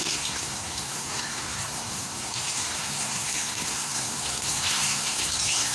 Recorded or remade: remade